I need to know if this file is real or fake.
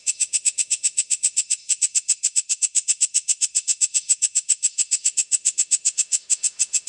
fake